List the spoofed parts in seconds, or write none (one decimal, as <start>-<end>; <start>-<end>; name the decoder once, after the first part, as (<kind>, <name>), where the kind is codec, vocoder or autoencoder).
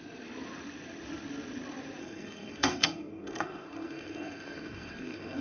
2.0-5.4 (codec, SNAC)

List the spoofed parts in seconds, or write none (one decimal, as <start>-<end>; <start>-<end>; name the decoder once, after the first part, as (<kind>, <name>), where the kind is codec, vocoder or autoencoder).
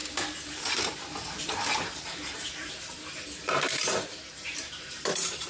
0.6-5.5 (vocoder, BigVGAN v2)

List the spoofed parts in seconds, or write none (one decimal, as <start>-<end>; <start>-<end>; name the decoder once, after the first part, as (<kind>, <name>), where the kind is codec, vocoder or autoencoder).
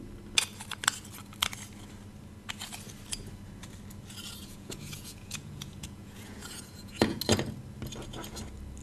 4.4-7.2 (vocoder, Vocos)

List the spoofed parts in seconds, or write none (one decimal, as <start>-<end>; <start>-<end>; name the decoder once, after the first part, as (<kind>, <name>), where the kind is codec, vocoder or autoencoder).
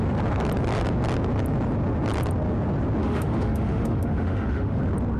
3.0-4.8 (autoencoder, DAC-VAE)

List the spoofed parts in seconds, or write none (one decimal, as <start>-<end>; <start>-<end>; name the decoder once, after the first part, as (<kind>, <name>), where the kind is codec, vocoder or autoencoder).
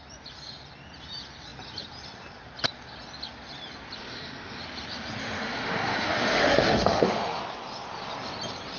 4.0-4.6 (autoencoder, DAC-VAE); 5.2-7.4